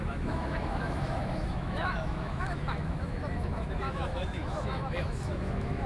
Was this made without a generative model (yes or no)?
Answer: no